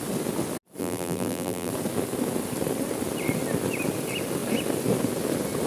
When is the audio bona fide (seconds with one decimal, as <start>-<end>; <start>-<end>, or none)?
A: 0.0-0.8; 1.7-5.7